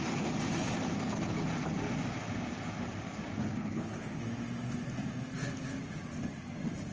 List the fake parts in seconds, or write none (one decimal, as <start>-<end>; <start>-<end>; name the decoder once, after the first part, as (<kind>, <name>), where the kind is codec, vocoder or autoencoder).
3.4-4.2 (codec, HILCodec)